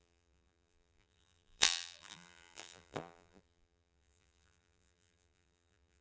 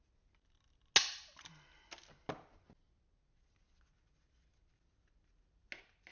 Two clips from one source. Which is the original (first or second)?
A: second